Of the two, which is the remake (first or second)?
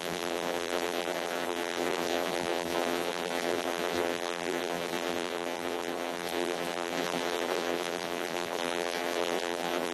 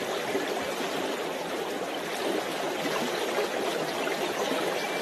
first